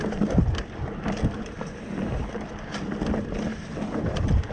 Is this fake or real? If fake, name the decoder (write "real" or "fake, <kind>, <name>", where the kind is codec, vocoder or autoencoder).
real